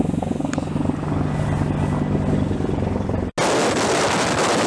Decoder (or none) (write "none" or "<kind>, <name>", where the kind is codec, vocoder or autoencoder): none